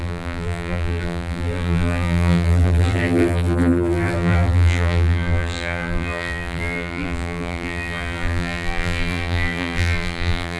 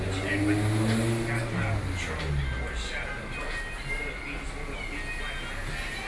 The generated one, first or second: first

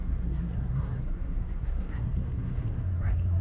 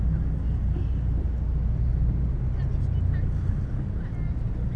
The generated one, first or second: first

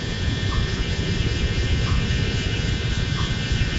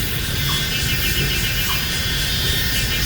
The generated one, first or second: first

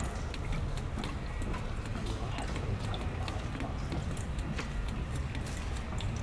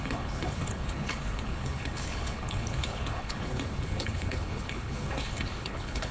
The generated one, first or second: second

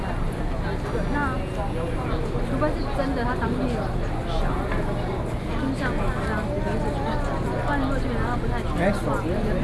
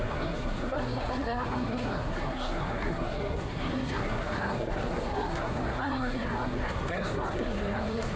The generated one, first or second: second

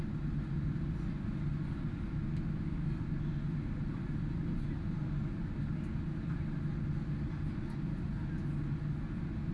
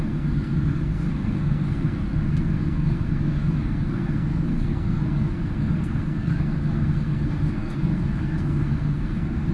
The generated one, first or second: second